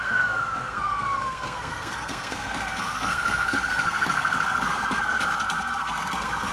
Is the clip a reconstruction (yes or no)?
yes